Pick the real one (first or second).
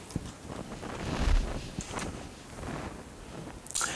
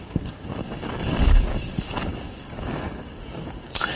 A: first